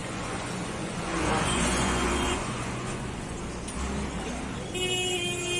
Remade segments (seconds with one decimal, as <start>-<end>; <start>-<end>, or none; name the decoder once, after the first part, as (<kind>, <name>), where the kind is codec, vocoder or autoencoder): 0.0-3.4 (vocoder, Vocos)